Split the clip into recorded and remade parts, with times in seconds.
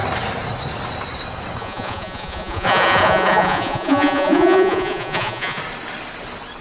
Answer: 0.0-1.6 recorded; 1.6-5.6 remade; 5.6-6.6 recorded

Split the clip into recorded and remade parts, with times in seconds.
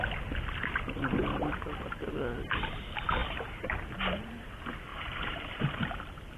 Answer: 0.0-4.9 recorded; 4.9-6.0 remade; 6.0-6.4 recorded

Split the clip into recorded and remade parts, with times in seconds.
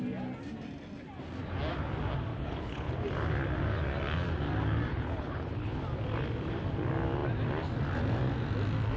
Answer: 0.0-2.3 recorded; 2.3-2.9 remade; 2.9-4.9 recorded; 4.9-5.8 remade; 5.8-9.0 recorded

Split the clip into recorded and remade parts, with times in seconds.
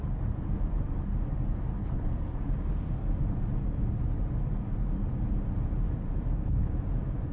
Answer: 0.0-1.8 recorded; 1.8-2.4 remade; 2.4-7.3 recorded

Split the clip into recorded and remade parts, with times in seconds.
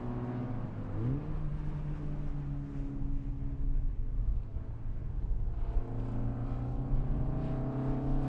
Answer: 0.0-8.3 recorded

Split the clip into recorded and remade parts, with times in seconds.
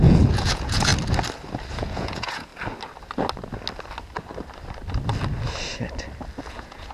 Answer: 0.0-0.9 remade; 0.9-1.7 recorded; 1.7-2.5 remade; 2.5-6.5 recorded; 6.5-6.9 remade